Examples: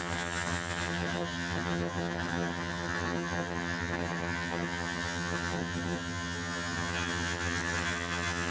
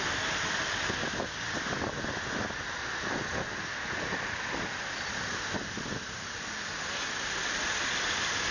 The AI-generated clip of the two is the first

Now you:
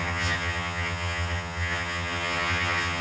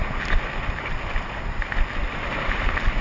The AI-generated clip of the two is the first